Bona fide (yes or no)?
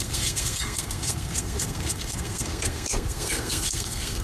no